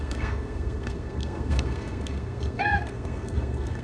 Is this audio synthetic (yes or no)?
yes